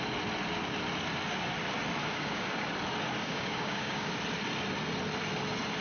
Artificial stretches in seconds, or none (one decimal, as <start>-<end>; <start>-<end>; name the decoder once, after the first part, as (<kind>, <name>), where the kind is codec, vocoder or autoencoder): 2.0-2.7 (codec, DAC); 3.2-4.1